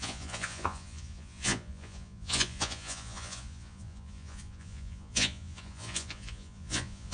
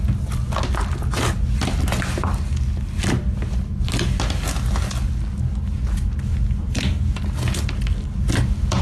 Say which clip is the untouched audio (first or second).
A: second